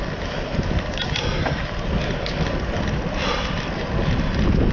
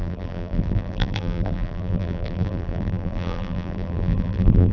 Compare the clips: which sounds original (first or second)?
first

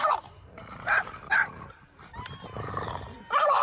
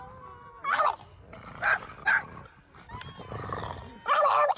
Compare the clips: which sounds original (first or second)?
second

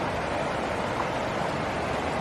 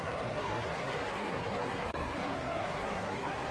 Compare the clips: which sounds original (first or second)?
first